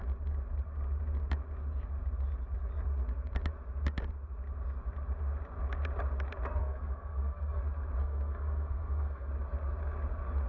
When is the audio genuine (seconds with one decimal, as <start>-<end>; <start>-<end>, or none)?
0.0-6.6; 7.6-8.0; 9.3-10.5